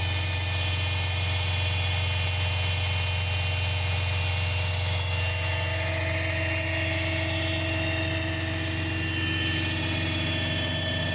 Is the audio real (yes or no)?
yes